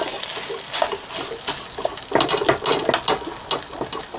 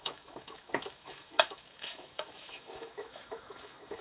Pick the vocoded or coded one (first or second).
second